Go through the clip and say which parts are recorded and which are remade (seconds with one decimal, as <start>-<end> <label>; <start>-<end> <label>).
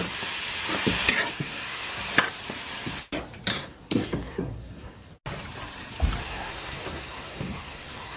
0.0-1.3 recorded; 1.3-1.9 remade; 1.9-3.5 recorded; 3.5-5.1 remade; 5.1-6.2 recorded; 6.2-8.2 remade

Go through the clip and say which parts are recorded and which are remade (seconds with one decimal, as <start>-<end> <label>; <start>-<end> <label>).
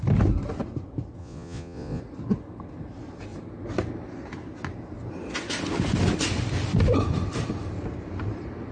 0.0-1.2 recorded; 1.2-2.0 remade; 2.0-8.7 recorded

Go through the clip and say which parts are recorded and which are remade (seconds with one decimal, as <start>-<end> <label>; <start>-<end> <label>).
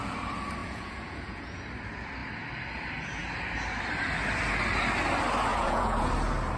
0.0-0.6 recorded; 0.6-1.6 remade; 1.6-5.5 recorded; 5.5-6.1 remade; 6.1-6.6 recorded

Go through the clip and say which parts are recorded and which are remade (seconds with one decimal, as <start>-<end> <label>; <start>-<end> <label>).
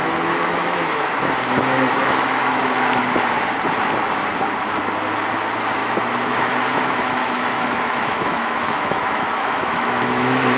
0.0-1.1 remade; 1.1-2.0 recorded; 2.0-3.0 remade; 3.0-5.8 recorded; 5.8-10.6 remade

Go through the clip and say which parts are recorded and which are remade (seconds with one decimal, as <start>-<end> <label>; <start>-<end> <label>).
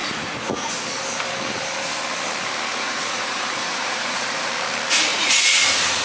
0.0-0.7 remade; 0.7-2.7 recorded; 2.7-4.5 remade; 4.5-5.1 recorded; 5.1-5.6 remade; 5.6-6.0 recorded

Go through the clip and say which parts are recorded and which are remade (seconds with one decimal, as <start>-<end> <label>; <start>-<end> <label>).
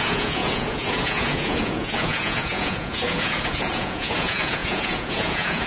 0.0-5.7 remade